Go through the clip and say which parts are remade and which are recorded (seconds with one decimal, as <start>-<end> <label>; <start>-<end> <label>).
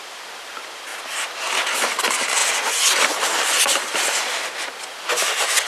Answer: 0.0-5.7 recorded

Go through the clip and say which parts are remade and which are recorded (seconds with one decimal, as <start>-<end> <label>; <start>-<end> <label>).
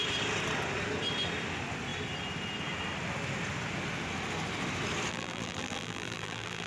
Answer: 0.0-5.1 recorded; 5.1-6.7 remade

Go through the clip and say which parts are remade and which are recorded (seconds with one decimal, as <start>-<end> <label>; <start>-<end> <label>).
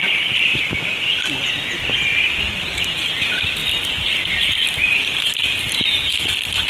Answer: 0.0-3.6 remade; 3.6-5.0 recorded; 5.0-6.7 remade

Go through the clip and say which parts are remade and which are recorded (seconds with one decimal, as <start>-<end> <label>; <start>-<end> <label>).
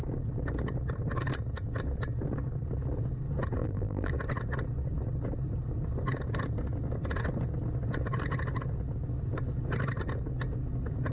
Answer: 0.0-3.6 recorded; 3.6-4.1 remade; 4.1-11.1 recorded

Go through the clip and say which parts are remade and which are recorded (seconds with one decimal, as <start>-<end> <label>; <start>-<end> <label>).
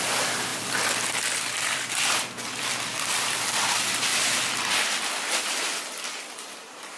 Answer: 0.0-0.5 recorded; 0.5-3.4 remade; 3.4-7.0 recorded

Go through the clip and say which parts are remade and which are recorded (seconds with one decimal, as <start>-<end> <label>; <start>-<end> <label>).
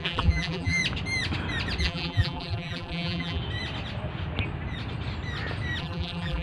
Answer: 0.0-0.8 remade; 0.8-1.8 recorded; 1.8-3.4 remade; 3.4-5.8 recorded; 5.8-6.4 remade